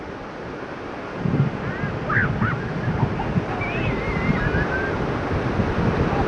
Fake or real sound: real